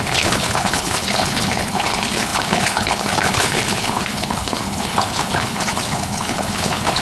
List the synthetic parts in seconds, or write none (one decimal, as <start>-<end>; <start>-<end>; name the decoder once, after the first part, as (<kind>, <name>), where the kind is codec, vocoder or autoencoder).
0.0-7.0 (codec, HILCodec)